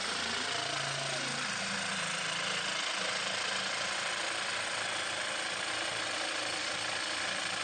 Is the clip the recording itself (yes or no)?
yes